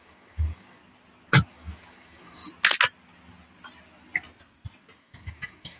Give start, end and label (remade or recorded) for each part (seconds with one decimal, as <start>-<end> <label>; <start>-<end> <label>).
0.0-0.8 remade; 0.8-1.5 recorded; 1.5-2.4 remade; 2.4-5.0 recorded; 5.0-5.8 remade